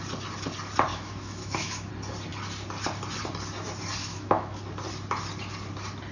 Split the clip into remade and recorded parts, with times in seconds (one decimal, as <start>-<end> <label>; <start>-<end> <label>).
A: 0.0-0.9 recorded; 0.9-1.9 remade; 1.9-4.0 recorded; 4.0-4.6 remade; 4.6-6.1 recorded